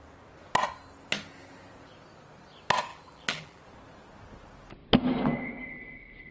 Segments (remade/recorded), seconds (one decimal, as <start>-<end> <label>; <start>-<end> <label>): 0.0-2.9 recorded; 2.9-3.6 remade; 3.6-6.3 recorded

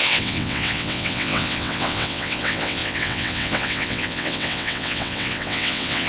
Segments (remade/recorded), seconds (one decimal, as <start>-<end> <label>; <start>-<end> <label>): 0.0-6.1 remade

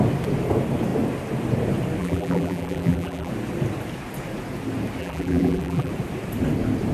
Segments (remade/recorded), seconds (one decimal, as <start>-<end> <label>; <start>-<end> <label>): 0.0-2.0 recorded; 2.0-3.3 remade; 3.3-5.0 recorded; 5.0-5.9 remade; 5.9-6.9 recorded

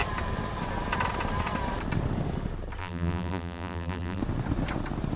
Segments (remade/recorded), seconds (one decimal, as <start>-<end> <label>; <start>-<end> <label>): 0.0-2.8 recorded; 2.8-4.2 remade; 4.2-5.2 recorded

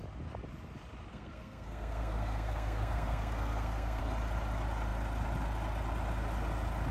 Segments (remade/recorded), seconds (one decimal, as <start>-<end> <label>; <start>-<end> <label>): 0.0-1.1 recorded; 1.1-4.0 remade; 4.0-6.9 recorded